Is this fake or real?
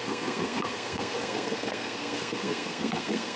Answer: fake